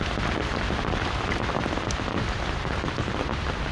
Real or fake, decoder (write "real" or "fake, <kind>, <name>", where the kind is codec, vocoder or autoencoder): real